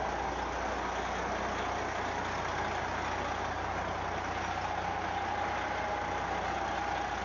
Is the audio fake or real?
real